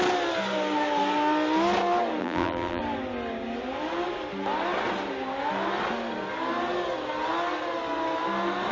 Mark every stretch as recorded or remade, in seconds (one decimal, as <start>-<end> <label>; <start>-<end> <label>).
0.0-2.2 recorded; 2.2-2.8 remade; 2.8-8.7 recorded